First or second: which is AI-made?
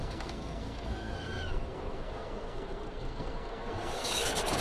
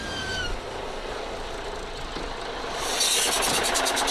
first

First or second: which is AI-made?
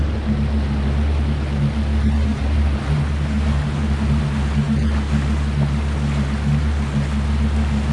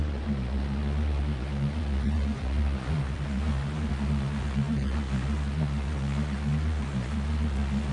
second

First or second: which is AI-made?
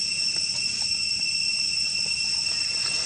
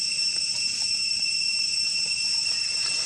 second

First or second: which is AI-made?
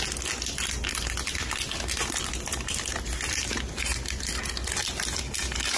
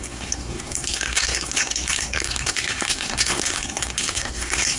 second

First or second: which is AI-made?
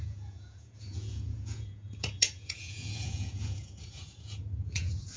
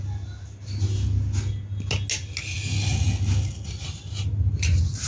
first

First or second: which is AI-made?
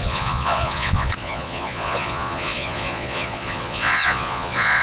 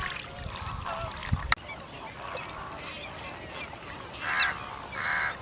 first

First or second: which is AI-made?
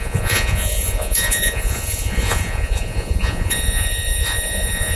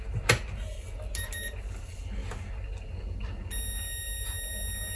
first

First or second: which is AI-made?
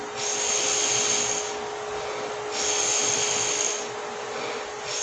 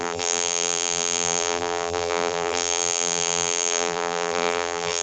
second